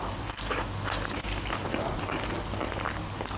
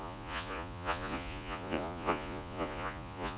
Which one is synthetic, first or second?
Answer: second